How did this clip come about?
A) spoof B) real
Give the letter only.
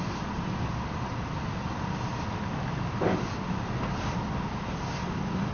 B